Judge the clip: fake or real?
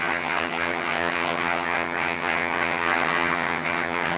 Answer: fake